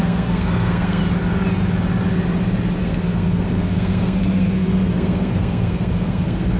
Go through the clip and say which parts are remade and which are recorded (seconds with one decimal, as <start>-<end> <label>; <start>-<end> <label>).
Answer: 0.0-1.0 remade; 1.0-2.8 recorded; 2.8-6.6 remade